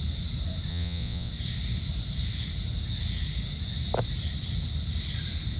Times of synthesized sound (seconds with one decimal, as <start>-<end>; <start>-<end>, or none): 0.7-1.3